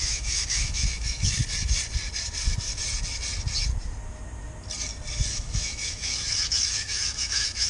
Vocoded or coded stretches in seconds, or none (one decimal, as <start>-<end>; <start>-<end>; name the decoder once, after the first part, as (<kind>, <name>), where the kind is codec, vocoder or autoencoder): 0.0-1.4 (autoencoder, DAC-VAE); 5.3-7.7